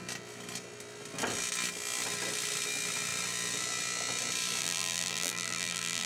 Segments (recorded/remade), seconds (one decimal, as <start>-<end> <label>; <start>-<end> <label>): 0.0-4.6 recorded; 4.6-6.1 remade